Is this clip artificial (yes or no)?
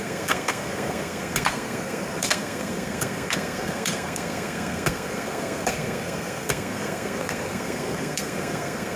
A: yes